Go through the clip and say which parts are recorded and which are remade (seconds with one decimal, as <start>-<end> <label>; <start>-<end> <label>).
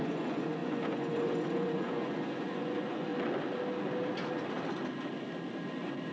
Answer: 0.0-3.1 remade; 3.1-6.1 recorded